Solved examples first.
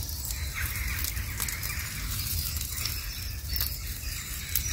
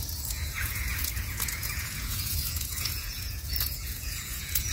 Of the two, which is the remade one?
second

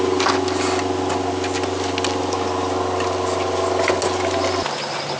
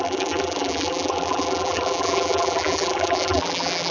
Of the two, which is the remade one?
second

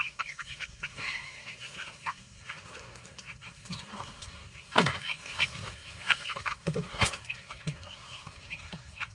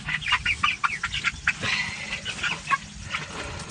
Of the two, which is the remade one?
first